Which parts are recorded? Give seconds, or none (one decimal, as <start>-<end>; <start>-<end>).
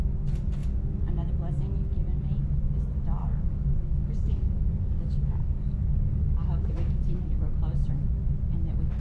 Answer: 0.0-3.2; 7.4-9.0